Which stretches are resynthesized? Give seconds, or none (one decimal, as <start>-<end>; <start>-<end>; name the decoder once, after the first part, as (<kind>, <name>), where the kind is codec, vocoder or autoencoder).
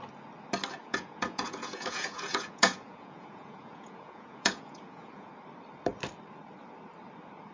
0.8-5.3 (vocoder, Vocos)